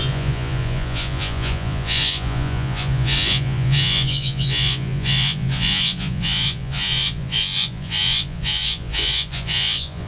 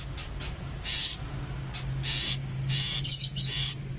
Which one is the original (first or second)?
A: second